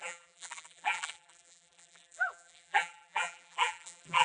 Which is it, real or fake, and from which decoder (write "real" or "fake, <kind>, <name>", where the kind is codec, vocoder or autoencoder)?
fake, vocoder, BigVGAN v2